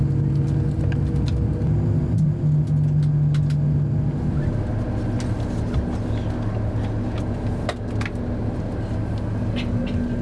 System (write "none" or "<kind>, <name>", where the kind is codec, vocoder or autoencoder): none